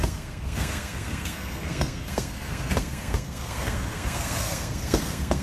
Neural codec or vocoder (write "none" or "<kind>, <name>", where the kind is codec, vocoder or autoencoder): codec, SNAC